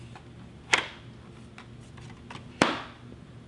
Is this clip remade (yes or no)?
no